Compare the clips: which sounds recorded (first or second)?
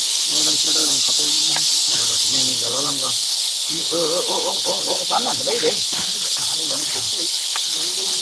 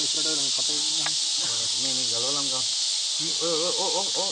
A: second